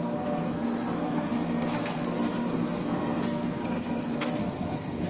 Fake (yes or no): yes